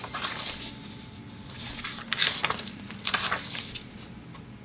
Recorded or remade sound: recorded